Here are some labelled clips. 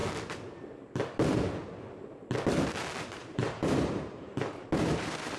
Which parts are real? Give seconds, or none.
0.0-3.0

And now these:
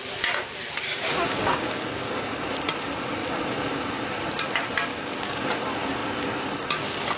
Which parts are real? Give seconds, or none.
0.0-0.9; 2.1-4.9; 5.4-7.2

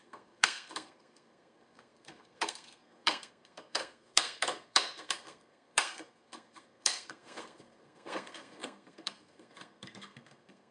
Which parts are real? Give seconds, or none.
none

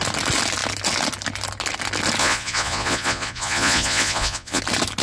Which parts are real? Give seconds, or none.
0.0-2.2; 4.6-5.0

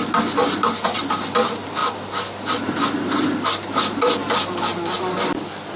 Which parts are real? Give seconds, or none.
0.0-5.8

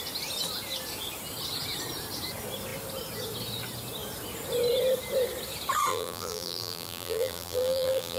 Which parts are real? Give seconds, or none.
0.0-5.9

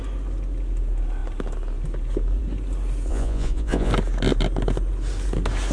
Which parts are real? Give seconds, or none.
0.0-3.1; 3.9-5.7

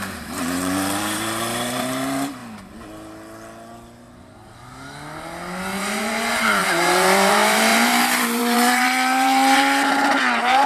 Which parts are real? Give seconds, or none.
2.4-5.8